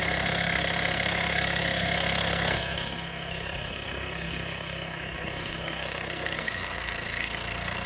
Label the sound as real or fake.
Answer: fake